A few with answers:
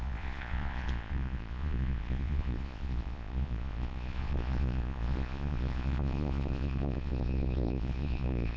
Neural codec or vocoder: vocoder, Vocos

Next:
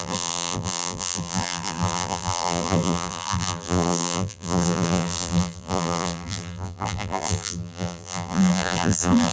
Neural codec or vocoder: vocoder, BigVGAN v2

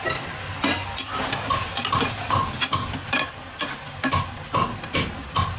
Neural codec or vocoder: none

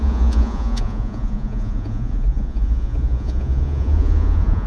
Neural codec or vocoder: vocoder, Vocos